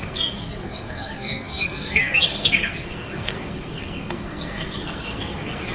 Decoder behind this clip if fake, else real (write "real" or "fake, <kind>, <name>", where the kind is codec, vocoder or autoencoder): fake, codec, SNAC